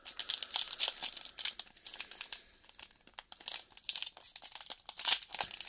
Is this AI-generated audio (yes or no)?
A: no